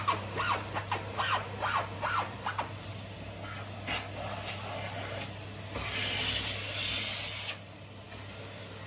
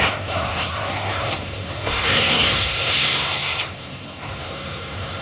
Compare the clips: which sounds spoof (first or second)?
second